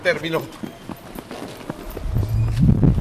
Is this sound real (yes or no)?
yes